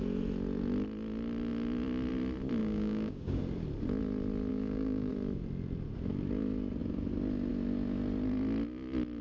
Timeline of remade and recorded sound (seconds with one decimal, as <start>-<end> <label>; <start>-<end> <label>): 0.0-2.6 recorded; 2.6-3.4 remade; 3.4-4.5 recorded; 4.5-5.1 remade; 5.1-9.2 recorded